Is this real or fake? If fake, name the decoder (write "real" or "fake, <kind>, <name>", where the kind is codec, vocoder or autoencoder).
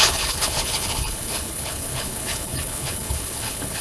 fake, codec, HILCodec